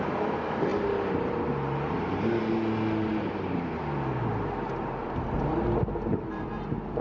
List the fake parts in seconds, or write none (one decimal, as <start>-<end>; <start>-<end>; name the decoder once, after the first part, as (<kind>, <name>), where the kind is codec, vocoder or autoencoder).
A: none